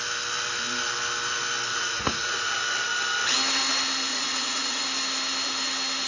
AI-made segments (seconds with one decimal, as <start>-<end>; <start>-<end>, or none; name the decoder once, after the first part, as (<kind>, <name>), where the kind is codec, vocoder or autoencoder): 1.7-2.5 (vocoder, Vocos); 4.1-4.8